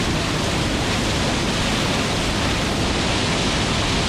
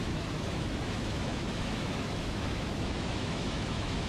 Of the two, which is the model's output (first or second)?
second